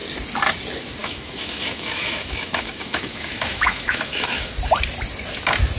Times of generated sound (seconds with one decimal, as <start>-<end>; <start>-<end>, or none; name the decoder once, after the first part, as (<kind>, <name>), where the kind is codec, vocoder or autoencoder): 1.0-4.5 (autoencoder, DAC-VAE)